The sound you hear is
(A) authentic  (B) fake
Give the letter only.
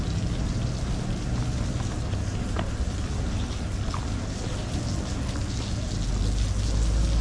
A